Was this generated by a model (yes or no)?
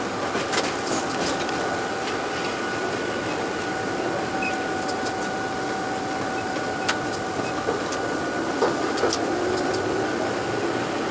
no